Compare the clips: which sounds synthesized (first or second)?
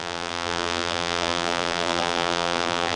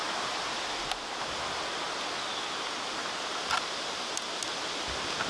first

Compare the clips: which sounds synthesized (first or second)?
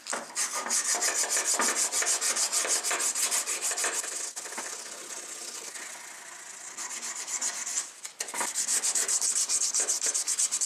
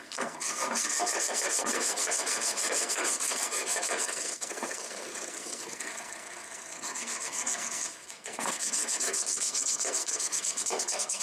second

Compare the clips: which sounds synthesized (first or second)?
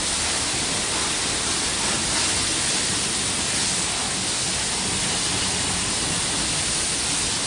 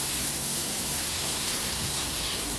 second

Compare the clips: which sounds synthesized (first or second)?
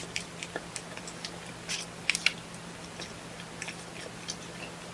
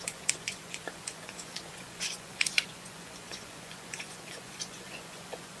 second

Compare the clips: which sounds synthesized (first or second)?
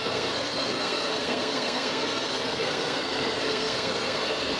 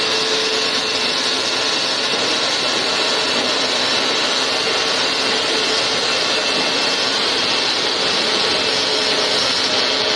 first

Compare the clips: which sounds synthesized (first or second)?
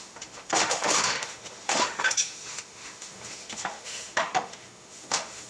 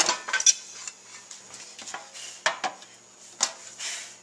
first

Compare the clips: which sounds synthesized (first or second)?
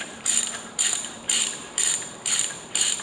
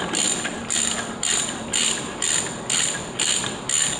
first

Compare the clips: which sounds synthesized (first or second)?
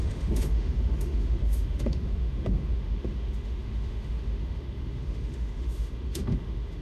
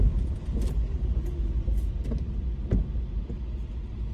first